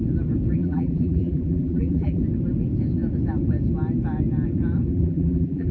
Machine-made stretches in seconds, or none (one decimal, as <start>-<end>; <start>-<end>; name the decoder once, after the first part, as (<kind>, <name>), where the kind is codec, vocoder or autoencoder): 0.6-2.2 (vocoder, BigVGAN v2); 4.9-5.7